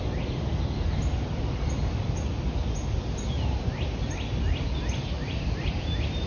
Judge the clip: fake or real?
real